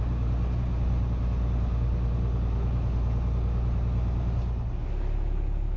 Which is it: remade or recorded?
recorded